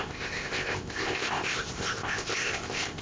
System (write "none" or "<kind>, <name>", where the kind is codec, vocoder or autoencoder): codec, ZipCodec